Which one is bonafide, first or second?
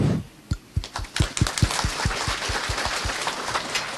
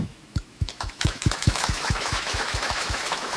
first